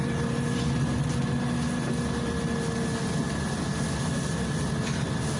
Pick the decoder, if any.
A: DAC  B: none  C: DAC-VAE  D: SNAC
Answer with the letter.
B